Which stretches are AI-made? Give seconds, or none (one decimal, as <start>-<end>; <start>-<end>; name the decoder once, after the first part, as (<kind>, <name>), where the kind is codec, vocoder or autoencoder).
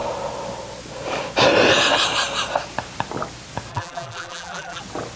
3.7-4.8 (vocoder, BigVGAN v2)